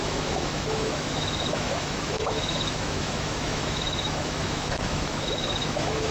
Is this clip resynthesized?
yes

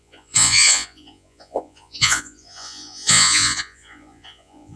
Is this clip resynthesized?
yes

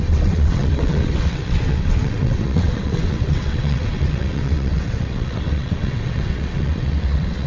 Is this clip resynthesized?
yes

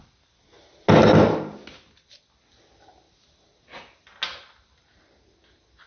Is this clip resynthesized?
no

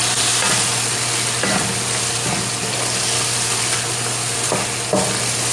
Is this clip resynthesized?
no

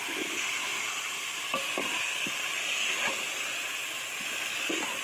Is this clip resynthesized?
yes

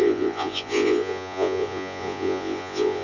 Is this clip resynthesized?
yes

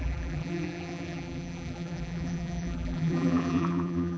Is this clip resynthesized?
yes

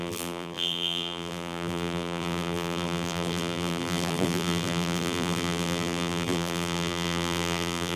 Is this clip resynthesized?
yes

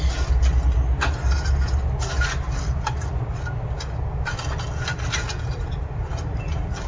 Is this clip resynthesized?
no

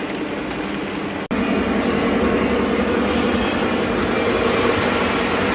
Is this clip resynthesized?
no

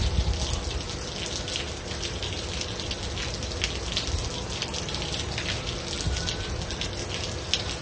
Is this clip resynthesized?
no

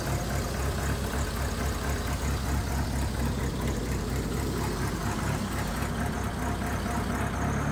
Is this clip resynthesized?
no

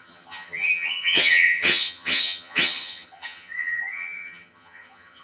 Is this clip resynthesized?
yes